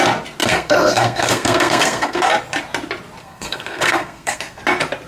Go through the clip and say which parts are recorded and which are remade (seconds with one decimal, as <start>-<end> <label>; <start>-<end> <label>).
0.0-0.4 recorded; 0.4-2.3 remade; 2.3-3.2 recorded; 3.2-4.6 remade; 4.6-5.1 recorded